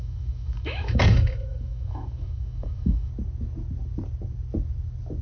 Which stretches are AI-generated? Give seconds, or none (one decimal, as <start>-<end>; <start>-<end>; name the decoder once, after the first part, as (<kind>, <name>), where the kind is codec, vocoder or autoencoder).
0.0-3.1 (autoencoder, DAC-VAE)